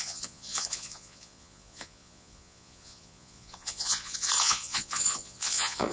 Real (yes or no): no